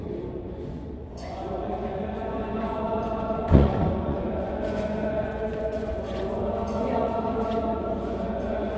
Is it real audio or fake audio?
fake